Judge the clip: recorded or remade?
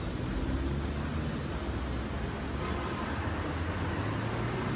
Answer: recorded